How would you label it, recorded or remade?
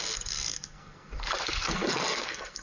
remade